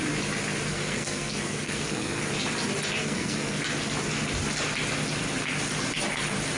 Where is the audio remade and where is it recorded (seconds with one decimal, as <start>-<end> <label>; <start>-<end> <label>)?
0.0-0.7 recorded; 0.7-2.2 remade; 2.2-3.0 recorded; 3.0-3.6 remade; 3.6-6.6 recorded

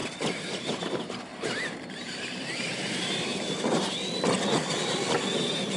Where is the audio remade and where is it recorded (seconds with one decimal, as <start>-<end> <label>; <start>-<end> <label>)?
0.0-0.6 recorded; 0.6-3.3 remade; 3.3-5.8 recorded

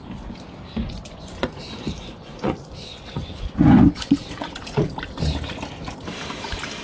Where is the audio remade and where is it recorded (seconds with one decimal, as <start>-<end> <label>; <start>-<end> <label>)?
0.0-0.8 recorded; 0.8-4.9 remade; 4.9-6.8 recorded